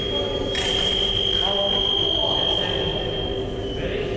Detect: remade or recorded recorded